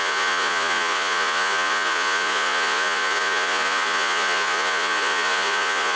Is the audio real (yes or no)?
no